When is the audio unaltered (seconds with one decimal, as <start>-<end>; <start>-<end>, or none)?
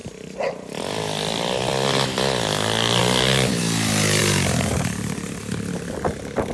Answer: 1.7-3.0; 3.6-6.5